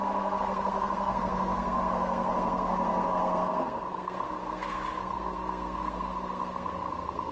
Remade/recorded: remade